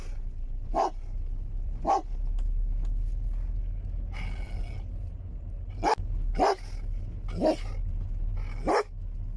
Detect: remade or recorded recorded